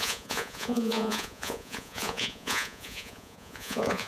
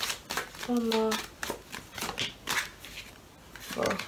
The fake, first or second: first